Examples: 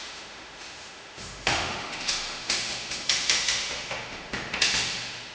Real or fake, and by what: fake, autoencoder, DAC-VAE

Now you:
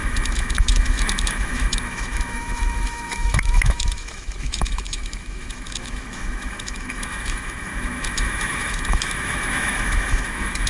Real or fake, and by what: fake, autoencoder, DAC-VAE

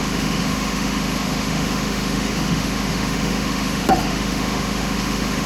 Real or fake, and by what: fake, autoencoder, DAC-VAE